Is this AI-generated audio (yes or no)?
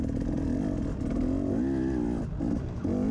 no